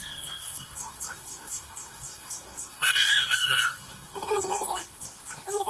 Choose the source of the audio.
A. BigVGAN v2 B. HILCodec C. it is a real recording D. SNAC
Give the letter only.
D